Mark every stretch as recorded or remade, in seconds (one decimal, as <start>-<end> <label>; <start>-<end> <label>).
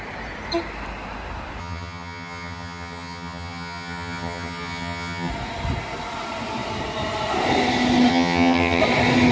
0.0-1.6 recorded; 1.6-5.3 remade; 5.3-8.1 recorded; 8.1-8.8 remade; 8.8-9.3 recorded